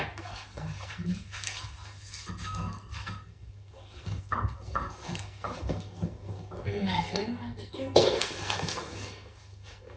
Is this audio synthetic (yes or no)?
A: yes